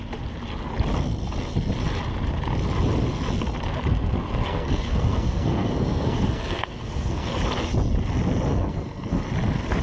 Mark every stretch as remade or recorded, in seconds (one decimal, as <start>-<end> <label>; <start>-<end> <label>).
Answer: 0.0-3.9 recorded; 3.9-7.3 remade; 7.3-8.5 recorded; 8.5-9.2 remade; 9.2-9.8 recorded